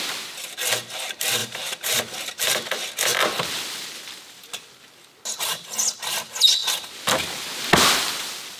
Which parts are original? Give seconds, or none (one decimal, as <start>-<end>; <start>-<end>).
0.0-1.4; 2.0-8.6